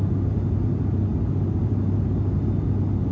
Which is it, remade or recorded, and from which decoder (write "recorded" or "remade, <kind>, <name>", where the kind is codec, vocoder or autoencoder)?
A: recorded